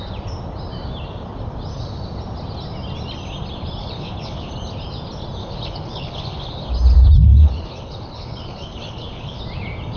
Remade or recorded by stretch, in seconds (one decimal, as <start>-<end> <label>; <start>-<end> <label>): 0.0-3.8 recorded; 3.8-4.5 remade; 4.5-5.4 recorded; 5.4-6.7 remade; 6.7-7.3 recorded; 7.3-9.4 remade; 9.4-10.0 recorded